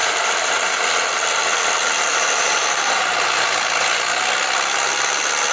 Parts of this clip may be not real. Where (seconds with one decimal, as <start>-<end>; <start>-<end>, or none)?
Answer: 0.0-0.8; 2.1-4.2